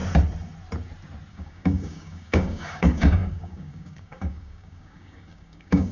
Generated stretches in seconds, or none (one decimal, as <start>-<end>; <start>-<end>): 1.3-5.9